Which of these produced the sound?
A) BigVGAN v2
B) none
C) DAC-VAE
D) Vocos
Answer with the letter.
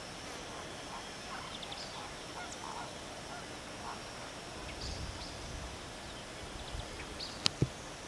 B